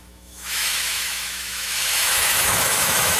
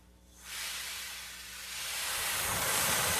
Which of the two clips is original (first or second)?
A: second